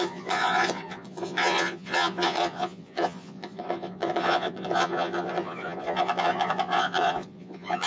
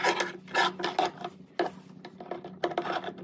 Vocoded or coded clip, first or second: first